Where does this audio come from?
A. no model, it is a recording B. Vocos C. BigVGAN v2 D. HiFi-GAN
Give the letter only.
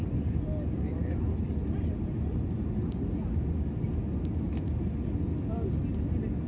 A